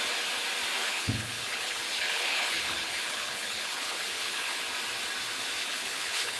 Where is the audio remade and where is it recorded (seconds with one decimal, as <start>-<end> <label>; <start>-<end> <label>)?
0.0-0.8 recorded; 0.8-4.6 remade; 4.6-5.6 recorded; 5.6-6.4 remade